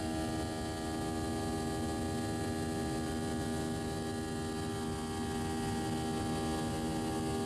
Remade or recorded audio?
recorded